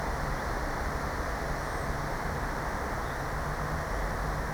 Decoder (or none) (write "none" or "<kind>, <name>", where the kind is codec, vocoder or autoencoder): none